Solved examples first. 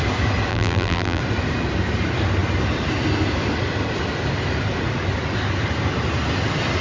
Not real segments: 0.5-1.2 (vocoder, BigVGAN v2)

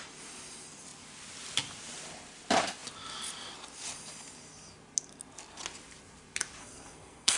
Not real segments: 6.6-7.4 (codec, SNAC)